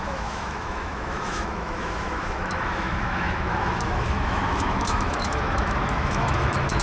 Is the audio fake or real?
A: fake